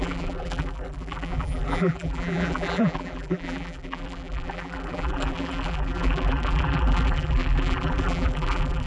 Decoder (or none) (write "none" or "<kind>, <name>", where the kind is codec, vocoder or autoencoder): vocoder, BigVGAN v2